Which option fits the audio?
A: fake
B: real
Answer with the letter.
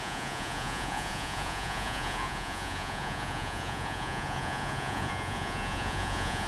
A